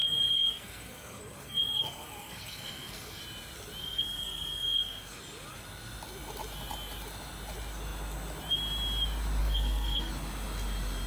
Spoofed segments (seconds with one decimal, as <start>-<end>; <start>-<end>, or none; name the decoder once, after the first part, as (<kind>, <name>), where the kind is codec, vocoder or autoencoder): 0.0-3.2 (codec, SNAC); 3.8-5.2; 9.4-10.1